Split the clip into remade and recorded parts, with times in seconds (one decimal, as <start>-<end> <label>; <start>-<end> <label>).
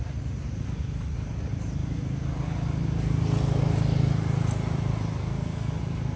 0.0-5.2 recorded; 5.2-5.8 remade; 5.8-6.2 recorded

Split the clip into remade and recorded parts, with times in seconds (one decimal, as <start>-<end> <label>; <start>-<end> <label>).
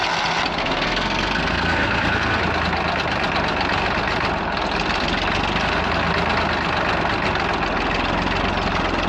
0.0-0.6 recorded; 0.6-2.4 remade; 2.4-9.1 recorded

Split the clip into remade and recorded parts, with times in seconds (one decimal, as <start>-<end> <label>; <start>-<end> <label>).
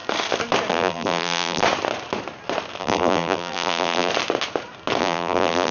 0.0-0.7 recorded; 0.7-1.6 remade; 1.6-2.8 recorded; 2.8-4.1 remade; 4.1-5.0 recorded; 5.0-5.7 remade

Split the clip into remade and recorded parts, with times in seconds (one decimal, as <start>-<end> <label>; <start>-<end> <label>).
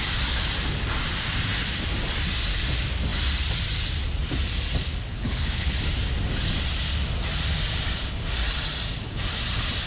0.0-5.1 recorded; 5.1-5.8 remade; 5.8-9.9 recorded